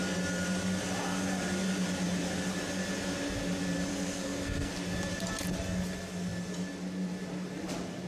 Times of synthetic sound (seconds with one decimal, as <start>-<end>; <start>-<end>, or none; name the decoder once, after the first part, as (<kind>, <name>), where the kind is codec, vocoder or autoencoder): 3.9-4.7 (codec, SNAC)